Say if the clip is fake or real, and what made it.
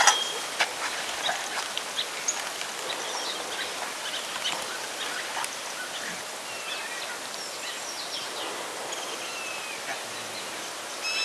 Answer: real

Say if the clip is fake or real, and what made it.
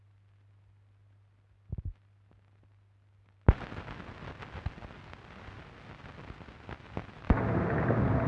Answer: real